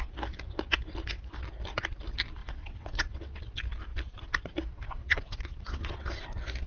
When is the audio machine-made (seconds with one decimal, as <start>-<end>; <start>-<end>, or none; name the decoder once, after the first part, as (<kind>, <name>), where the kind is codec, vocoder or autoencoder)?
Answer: 2.4-3.4 (vocoder, WaveNeXt); 5.0-6.1